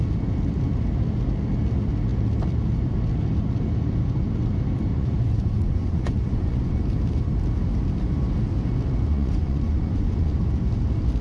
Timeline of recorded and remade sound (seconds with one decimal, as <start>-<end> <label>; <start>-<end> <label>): 0.0-4.9 recorded; 4.9-6.8 remade; 6.8-9.1 recorded; 9.1-10.4 remade; 10.4-11.2 recorded